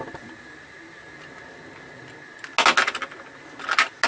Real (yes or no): yes